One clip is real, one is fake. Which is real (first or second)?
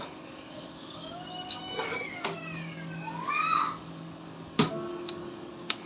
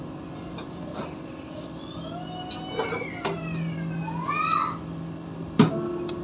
second